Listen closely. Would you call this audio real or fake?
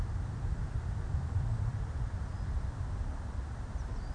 fake